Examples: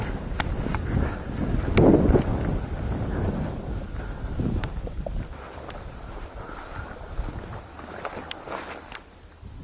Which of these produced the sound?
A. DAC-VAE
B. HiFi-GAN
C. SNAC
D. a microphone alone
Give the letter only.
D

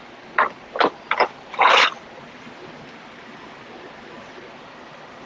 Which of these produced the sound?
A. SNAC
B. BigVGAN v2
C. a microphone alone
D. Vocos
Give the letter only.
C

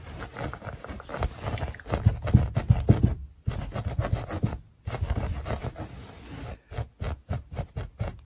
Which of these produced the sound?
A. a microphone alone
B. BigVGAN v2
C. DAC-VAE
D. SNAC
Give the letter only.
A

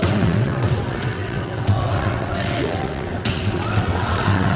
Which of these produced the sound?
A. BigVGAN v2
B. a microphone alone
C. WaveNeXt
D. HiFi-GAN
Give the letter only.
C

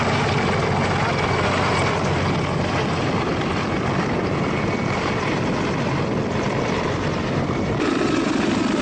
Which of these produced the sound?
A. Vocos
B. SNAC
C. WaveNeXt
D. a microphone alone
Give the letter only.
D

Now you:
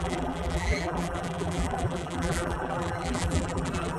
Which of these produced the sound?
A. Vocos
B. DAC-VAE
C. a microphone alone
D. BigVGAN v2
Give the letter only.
D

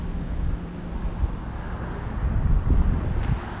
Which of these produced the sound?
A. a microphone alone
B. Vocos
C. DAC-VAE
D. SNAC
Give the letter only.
A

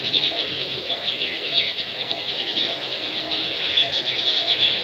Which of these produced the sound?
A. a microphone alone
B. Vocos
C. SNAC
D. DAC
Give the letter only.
C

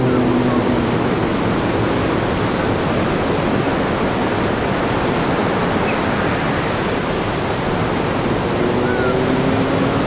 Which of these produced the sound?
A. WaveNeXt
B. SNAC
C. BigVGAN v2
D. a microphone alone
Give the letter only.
D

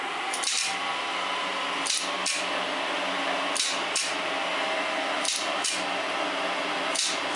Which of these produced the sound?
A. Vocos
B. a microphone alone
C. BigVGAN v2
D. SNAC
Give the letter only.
B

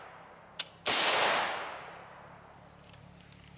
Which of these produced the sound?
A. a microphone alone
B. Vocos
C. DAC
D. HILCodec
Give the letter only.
A